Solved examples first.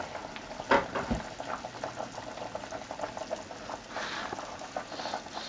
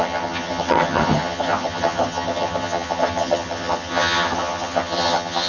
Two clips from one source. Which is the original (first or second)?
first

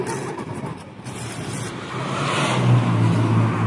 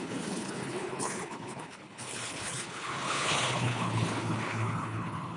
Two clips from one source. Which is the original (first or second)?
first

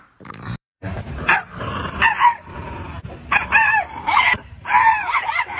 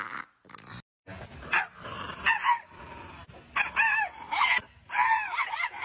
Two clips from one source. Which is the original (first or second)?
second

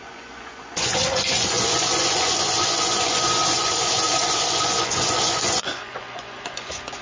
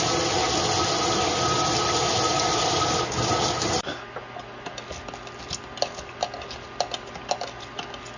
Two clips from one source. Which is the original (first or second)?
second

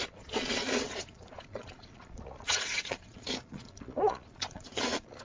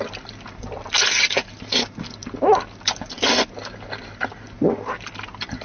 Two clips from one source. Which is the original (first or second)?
second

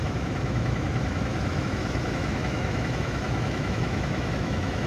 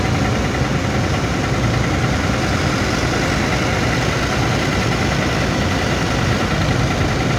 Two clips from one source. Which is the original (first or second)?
second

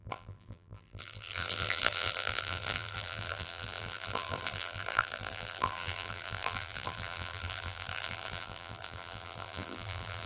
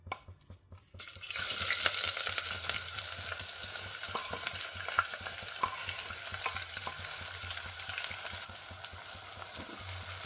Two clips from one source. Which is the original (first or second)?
second